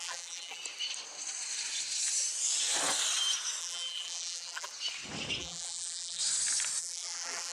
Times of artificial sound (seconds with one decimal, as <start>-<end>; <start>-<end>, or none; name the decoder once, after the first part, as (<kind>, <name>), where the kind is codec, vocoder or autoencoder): 0.0-0.6 (vocoder, BigVGAN v2); 3.6-4.7; 5.4-6.2; 6.8-7.5